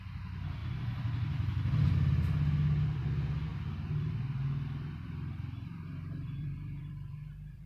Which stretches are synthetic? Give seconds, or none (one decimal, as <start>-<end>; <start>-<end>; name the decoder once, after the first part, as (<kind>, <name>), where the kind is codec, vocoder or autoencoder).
3.5-7.7 (vocoder, BigVGAN v2)